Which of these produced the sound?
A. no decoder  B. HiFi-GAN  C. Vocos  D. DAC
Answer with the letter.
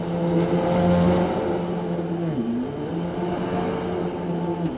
A